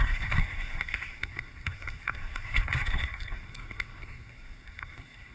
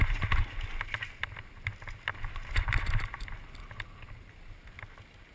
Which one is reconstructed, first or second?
first